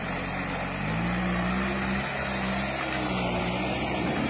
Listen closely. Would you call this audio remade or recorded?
recorded